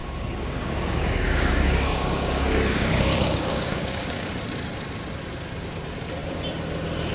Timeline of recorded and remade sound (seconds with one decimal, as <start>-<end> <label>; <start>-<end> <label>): 0.0-4.3 remade; 4.3-7.1 recorded